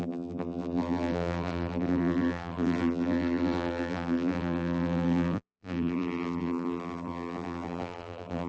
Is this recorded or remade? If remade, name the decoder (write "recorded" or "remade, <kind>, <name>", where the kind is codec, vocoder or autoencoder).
remade, vocoder, BigVGAN v2